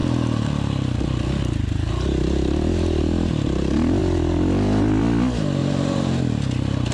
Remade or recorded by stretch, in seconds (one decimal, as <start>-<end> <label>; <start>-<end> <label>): 0.0-5.6 recorded; 5.6-6.2 remade; 6.2-6.9 recorded